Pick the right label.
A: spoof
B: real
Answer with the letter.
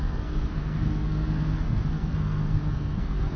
A